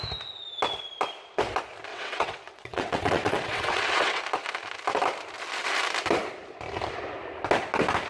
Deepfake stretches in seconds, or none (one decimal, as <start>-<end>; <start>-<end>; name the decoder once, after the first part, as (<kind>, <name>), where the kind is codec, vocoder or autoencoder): 1.9-4.2 (vocoder, WaveNeXt)